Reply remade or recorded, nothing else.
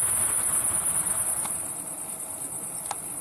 recorded